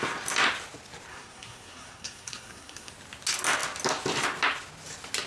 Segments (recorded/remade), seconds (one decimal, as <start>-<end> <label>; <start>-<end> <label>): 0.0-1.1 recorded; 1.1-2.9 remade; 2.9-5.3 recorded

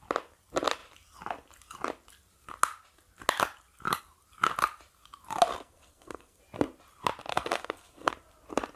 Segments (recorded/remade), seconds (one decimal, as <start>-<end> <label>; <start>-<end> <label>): 0.0-5.5 recorded; 5.5-6.4 remade; 6.4-7.3 recorded; 7.3-8.1 remade; 8.1-8.8 recorded

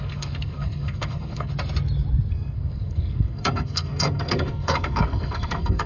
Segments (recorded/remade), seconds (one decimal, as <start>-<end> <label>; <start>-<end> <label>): 0.0-1.5 remade; 1.5-2.3 recorded; 2.3-5.9 remade

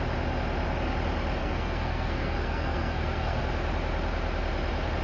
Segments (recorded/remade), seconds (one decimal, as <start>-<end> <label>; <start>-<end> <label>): 0.0-1.4 recorded; 1.4-3.4 remade; 3.4-5.0 recorded